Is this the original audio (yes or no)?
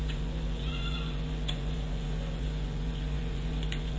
no